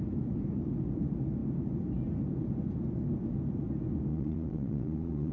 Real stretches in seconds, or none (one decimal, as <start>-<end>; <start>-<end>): 0.0-4.1